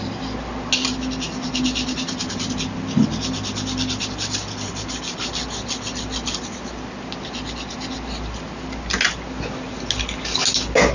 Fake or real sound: real